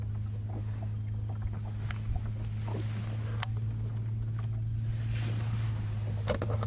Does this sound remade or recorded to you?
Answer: recorded